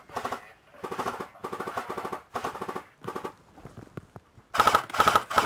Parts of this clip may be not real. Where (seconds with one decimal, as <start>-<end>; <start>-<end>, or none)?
none